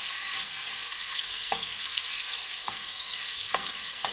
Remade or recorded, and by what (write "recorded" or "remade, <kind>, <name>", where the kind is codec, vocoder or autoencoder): remade, codec, SNAC